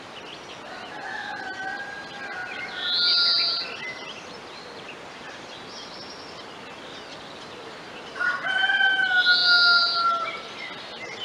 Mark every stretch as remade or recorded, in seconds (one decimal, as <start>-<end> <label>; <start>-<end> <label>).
0.0-11.2 recorded